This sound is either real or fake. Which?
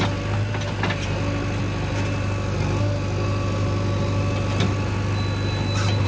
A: real